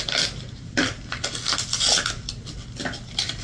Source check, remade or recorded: recorded